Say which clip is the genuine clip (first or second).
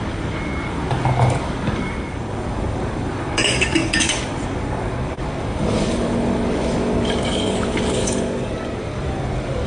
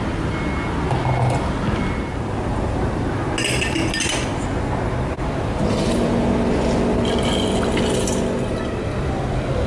second